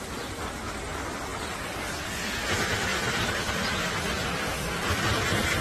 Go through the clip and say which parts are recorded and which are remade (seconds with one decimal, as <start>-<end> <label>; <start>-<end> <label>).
0.0-1.3 recorded; 1.3-2.5 remade; 2.5-2.9 recorded; 2.9-5.6 remade